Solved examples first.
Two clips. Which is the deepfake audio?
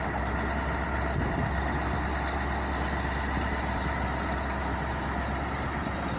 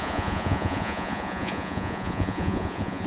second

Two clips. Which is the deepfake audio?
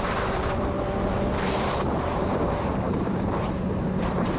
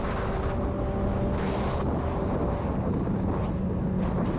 first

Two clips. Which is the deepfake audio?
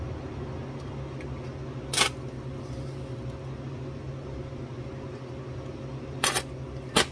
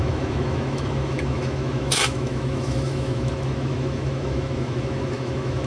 second